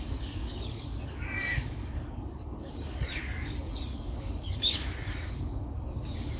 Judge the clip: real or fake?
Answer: fake